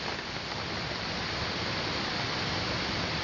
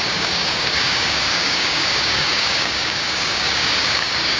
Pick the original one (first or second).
first